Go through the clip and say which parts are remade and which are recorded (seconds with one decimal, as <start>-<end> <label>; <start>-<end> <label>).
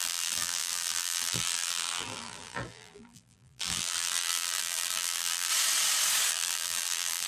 0.0-5.5 remade; 5.5-6.3 recorded; 6.3-7.3 remade